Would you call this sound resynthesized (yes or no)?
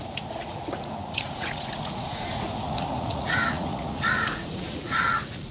yes